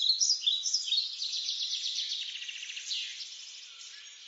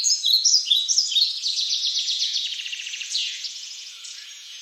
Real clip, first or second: first